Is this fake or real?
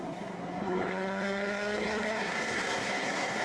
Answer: fake